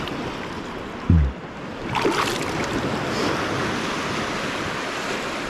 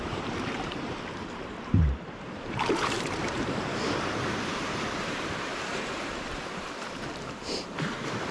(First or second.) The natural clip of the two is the first